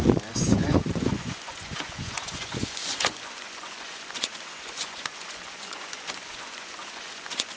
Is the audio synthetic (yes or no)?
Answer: yes